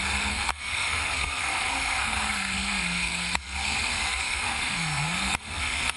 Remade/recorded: remade